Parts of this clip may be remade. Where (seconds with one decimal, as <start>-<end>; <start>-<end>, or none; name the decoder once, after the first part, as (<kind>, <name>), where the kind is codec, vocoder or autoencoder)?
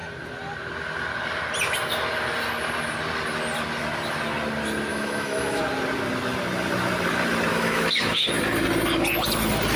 4.9-5.6 (autoencoder, DAC-VAE); 7.5-8.3